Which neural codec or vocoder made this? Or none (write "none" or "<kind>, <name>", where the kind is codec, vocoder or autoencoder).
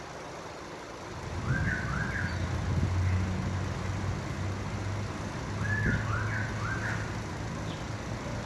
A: none